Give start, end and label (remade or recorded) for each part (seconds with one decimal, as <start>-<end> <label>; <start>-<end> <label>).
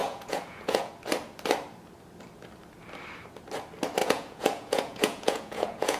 0.0-0.9 remade; 0.9-4.0 recorded; 4.0-6.0 remade